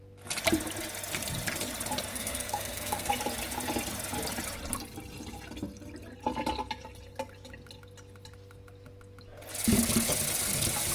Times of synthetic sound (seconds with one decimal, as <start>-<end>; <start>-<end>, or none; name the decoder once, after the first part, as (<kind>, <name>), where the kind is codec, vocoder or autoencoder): 2.1-3.1 (codec, SNAC)